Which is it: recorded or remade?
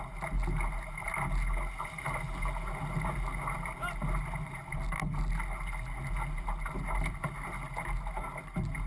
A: recorded